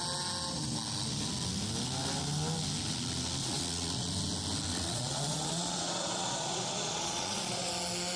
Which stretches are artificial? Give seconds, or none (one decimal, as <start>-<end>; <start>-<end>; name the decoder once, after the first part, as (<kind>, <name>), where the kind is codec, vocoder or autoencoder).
3.4-4.1 (vocoder, Vocos); 4.7-7.7